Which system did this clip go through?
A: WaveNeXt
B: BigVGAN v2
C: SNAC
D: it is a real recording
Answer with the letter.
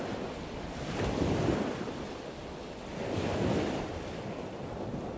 D